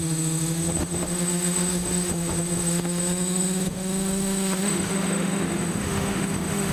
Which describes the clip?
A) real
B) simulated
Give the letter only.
B